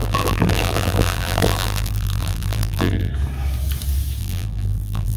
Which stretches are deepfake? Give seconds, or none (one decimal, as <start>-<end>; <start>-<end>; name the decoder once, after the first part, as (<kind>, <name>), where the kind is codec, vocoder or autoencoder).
0.0-3.1 (vocoder, BigVGAN v2); 4.2-5.2